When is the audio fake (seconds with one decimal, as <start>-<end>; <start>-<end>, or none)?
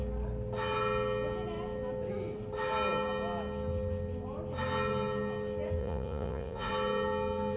5.8-6.7